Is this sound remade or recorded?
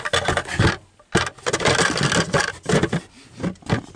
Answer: recorded